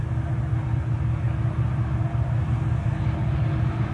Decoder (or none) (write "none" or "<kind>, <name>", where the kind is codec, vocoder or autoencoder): none